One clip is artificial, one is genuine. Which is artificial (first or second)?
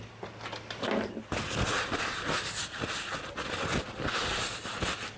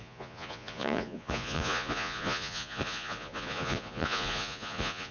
second